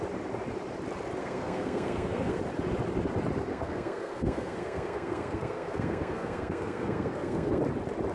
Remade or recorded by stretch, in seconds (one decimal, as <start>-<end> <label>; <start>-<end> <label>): 0.0-1.2 recorded; 1.2-2.4 remade; 2.4-3.5 recorded; 3.5-7.6 remade; 7.6-8.1 recorded